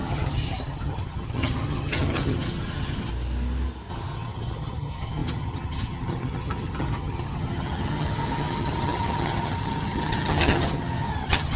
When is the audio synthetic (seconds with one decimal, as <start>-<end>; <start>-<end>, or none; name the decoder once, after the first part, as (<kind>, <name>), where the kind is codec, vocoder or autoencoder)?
0.0-3.1 (vocoder, HiFi-GAN); 3.9-11.6

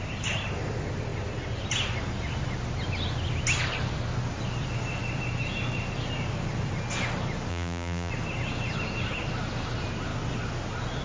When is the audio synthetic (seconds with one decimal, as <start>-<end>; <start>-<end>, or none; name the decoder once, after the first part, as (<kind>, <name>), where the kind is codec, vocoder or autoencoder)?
7.5-8.1 (vocoder, BigVGAN v2)

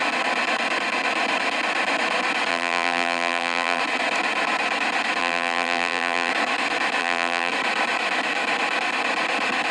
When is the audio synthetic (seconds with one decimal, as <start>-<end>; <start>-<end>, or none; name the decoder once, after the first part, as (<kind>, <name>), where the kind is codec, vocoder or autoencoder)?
2.5-3.8 (vocoder, BigVGAN v2); 5.2-6.3; 7.0-7.5

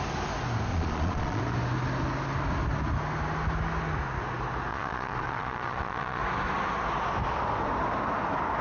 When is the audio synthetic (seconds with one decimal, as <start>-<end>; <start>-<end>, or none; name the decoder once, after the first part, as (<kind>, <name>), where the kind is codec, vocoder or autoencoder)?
0.7-1.4 (vocoder, Vocos); 4.7-6.2

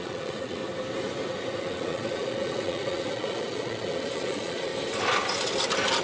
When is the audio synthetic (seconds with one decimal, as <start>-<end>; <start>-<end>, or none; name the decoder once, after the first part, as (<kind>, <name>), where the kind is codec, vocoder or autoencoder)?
0.0-0.6 (vocoder, Vocos); 1.6-4.7

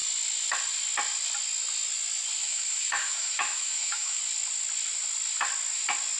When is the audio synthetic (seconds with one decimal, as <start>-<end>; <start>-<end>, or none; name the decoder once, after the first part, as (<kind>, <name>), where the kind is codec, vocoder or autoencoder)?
2.4-4.2 (autoencoder, DAC-VAE)

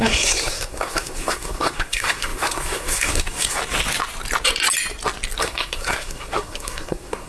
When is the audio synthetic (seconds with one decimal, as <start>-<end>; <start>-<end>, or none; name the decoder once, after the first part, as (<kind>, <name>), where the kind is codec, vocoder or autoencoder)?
0.0-3.6 (codec, SNAC); 5.4-7.3

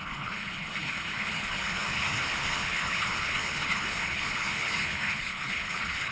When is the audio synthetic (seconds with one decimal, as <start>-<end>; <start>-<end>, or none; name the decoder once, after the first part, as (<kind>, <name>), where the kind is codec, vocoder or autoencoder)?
0.0-6.1 (codec, HILCodec)